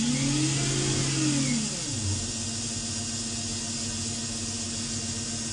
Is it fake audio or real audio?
real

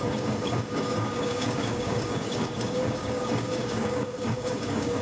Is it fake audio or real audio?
fake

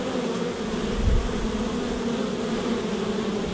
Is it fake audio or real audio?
real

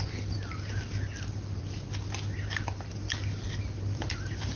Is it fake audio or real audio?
real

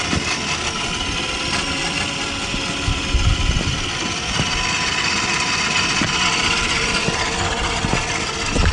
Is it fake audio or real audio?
real